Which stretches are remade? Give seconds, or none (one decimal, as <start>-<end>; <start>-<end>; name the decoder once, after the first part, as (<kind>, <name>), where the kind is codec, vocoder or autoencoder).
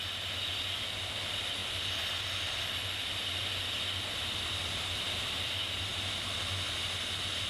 4.6-5.5 (vocoder, BigVGAN v2)